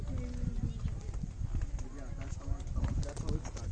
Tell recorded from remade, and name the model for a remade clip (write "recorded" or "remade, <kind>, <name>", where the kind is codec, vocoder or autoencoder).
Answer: recorded